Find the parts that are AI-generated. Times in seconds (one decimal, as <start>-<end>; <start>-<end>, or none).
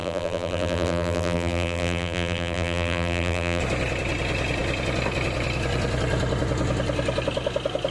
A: 0.0-3.6